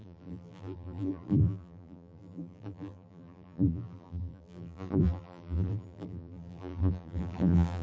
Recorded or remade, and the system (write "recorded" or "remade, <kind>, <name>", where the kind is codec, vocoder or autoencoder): remade, vocoder, BigVGAN v2